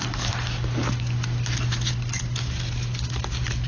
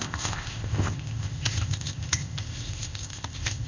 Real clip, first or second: first